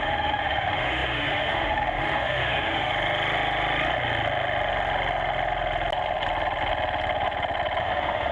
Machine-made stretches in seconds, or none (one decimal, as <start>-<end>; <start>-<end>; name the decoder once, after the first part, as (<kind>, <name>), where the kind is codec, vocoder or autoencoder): 0.0-2.9 (autoencoder, DAC-VAE); 7.8-8.3